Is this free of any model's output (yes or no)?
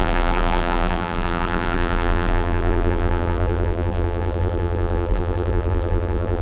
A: no